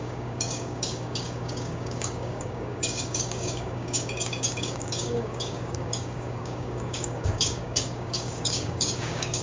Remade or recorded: remade